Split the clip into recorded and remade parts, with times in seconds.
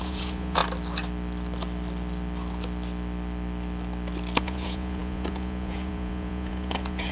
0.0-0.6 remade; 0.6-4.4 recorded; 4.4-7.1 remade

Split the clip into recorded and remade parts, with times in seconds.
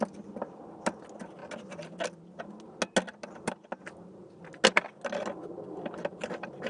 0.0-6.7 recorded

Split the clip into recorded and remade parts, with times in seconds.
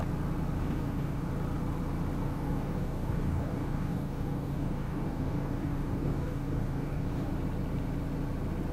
0.0-0.6 recorded; 0.6-1.3 remade; 1.3-2.2 recorded; 2.2-7.3 remade; 7.3-8.7 recorded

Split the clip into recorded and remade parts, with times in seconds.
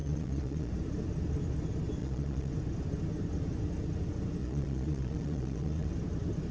0.0-0.7 remade; 0.7-2.0 recorded; 2.0-2.5 remade; 2.5-4.4 recorded; 4.4-5.9 remade; 5.9-6.5 recorded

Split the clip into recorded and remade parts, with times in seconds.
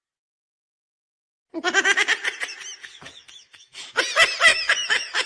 0.0-2.8 recorded; 2.8-4.0 remade; 4.0-4.5 recorded; 4.5-5.3 remade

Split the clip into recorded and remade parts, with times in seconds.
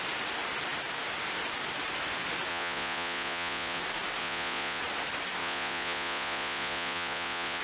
0.0-2.5 recorded; 2.5-3.8 remade; 3.8-4.2 recorded; 4.2-4.8 remade; 4.8-5.4 recorded; 5.4-7.6 remade